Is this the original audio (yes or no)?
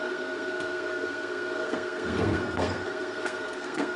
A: no